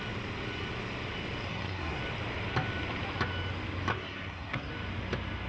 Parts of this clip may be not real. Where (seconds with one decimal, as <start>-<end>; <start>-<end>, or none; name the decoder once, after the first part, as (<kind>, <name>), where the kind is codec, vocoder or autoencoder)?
1.5-2.0 (codec, SNAC); 3.9-4.7